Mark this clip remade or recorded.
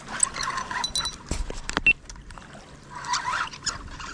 recorded